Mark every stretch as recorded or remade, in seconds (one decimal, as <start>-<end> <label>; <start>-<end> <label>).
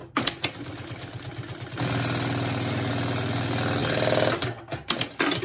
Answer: 0.0-5.4 recorded